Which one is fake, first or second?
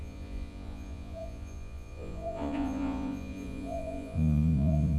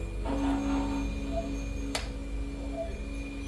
first